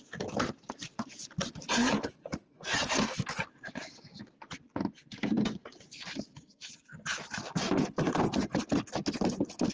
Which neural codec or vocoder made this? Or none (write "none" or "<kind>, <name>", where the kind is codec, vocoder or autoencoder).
none